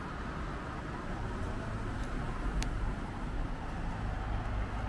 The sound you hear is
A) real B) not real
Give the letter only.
A